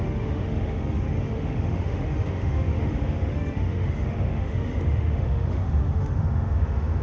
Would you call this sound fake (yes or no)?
yes